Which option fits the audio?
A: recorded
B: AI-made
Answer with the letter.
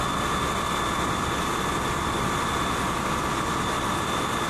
A